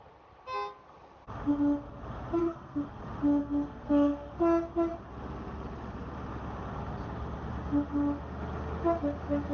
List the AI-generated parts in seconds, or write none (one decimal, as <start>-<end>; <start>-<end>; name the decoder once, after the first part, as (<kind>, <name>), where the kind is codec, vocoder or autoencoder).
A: 2.4-3.0 (codec, SNAC); 3.4-4.3